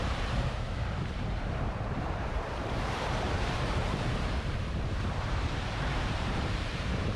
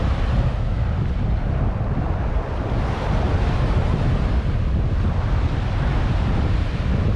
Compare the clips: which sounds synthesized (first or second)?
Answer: first